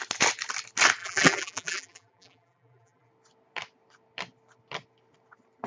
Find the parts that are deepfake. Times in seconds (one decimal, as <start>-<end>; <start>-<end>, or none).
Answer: 1.0-3.1